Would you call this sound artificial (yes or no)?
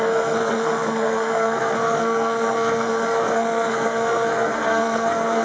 yes